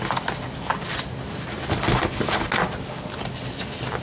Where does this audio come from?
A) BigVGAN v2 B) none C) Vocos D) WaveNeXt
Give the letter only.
B